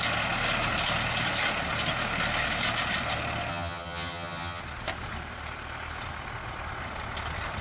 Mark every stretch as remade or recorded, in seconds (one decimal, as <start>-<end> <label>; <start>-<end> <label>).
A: 0.0-3.5 recorded; 3.5-4.6 remade; 4.6-7.6 recorded